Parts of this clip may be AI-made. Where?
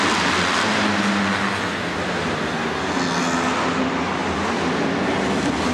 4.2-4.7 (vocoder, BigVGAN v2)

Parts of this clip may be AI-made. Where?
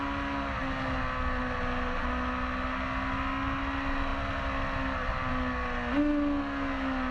none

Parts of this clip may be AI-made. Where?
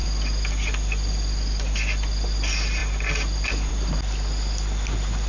none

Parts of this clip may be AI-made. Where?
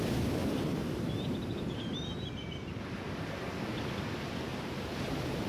0.4-2.8 (vocoder, BigVGAN v2); 4.5-5.5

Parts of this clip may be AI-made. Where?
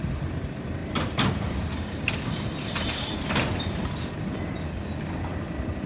0.8-3.8 (vocoder, BigVGAN v2)